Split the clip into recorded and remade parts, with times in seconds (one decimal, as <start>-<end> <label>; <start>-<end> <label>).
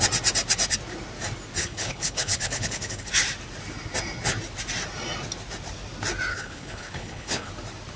0.0-1.6 recorded; 1.6-3.1 remade; 3.1-6.3 recorded; 6.3-7.5 remade; 7.5-8.0 recorded